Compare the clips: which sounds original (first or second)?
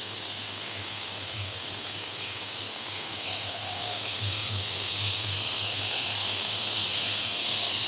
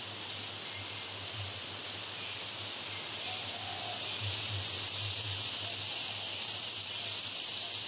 second